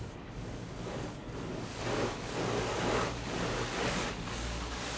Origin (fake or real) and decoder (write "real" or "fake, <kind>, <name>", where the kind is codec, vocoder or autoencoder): fake, codec, DAC